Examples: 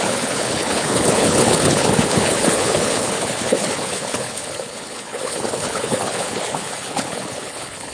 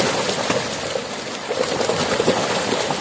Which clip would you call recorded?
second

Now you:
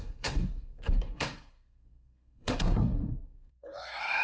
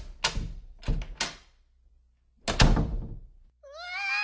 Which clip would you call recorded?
second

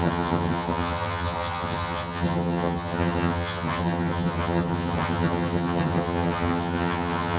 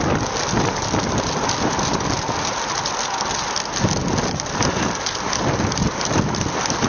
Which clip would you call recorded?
second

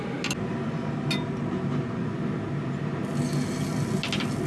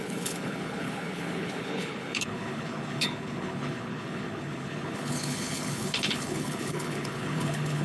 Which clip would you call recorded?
first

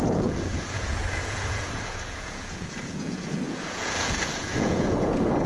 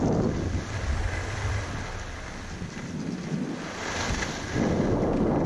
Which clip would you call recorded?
second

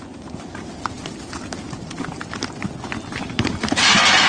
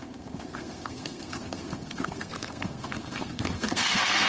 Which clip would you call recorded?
first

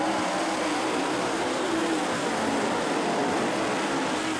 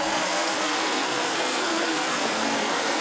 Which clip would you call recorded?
first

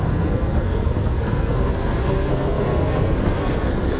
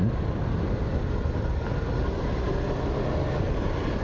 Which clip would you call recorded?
second